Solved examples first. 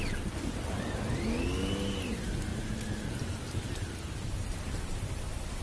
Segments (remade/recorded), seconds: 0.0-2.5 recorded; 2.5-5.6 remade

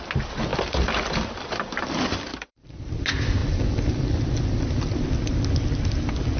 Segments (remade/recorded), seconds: 0.0-0.5 recorded; 0.5-2.7 remade; 2.7-3.4 recorded; 3.4-4.9 remade; 4.9-6.4 recorded

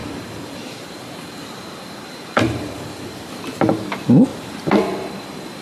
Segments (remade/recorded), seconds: 0.0-3.4 remade; 3.4-4.3 recorded; 4.3-4.8 remade; 4.8-5.6 recorded

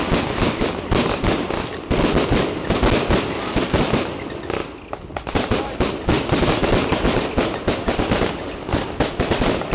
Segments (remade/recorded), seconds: 0.0-9.7 recorded

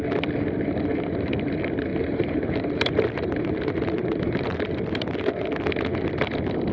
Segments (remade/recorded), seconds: 0.0-1.9 recorded; 1.9-5.3 remade; 5.3-6.7 recorded

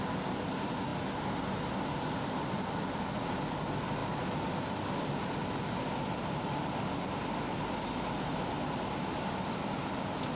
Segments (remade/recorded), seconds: 0.0-0.9 remade; 0.9-2.2 recorded; 2.2-4.0 remade; 4.0-6.2 recorded; 6.2-10.3 remade

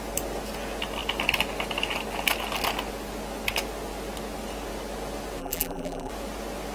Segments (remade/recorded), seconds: 0.0-5.4 recorded; 5.4-6.1 remade; 6.1-6.7 recorded

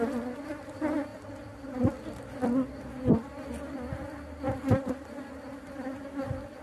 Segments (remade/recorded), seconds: 0.0-1.1 recorded; 1.1-2.0 remade; 2.0-6.6 recorded